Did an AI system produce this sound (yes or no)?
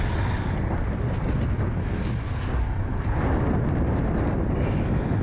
no